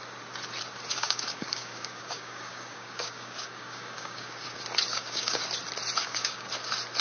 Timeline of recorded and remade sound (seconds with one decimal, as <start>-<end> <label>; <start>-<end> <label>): 0.0-0.9 recorded; 0.9-4.5 remade; 4.5-4.9 recorded; 4.9-5.4 remade; 5.4-6.0 recorded; 6.0-6.5 remade; 6.5-7.0 recorded